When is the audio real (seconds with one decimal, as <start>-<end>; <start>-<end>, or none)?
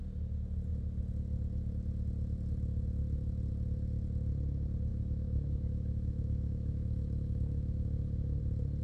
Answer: 0.0-4.9; 8.4-8.8